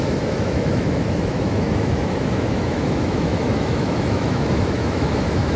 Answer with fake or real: fake